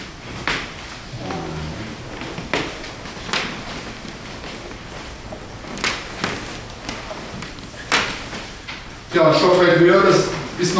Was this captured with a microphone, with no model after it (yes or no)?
yes